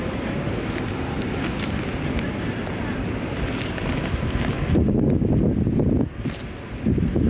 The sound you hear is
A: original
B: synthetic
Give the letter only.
A